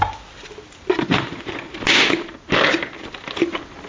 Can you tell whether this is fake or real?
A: real